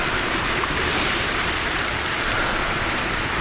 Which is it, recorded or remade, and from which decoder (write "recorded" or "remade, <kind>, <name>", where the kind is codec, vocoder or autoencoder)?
recorded